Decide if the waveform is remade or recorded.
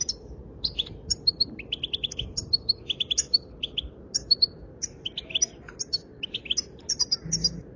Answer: recorded